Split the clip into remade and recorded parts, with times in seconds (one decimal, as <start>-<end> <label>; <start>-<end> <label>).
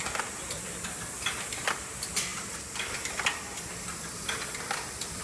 0.0-5.2 recorded